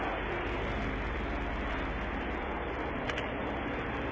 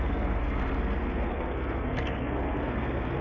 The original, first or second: first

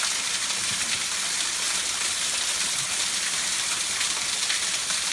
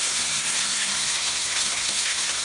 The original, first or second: first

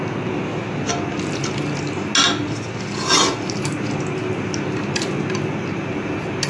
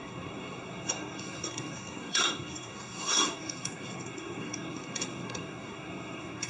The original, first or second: first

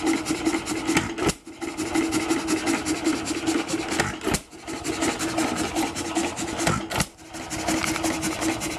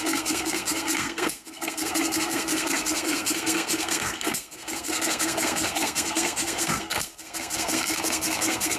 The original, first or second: first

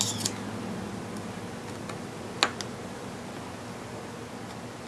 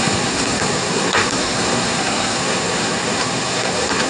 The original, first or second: first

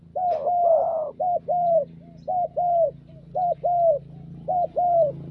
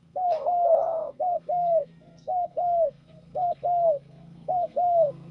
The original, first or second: first